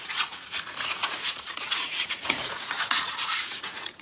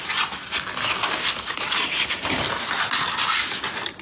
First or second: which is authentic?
second